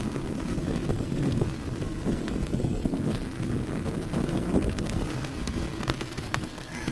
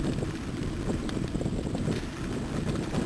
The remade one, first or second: first